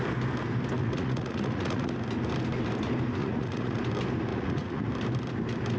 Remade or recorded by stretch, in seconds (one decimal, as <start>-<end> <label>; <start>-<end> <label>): 0.0-0.8 recorded; 0.8-1.9 remade; 1.9-3.2 recorded; 3.2-3.8 remade; 3.8-4.3 recorded; 4.3-4.9 remade; 4.9-5.8 recorded